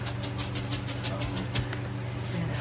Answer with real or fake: real